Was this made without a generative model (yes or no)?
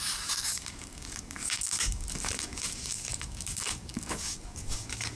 no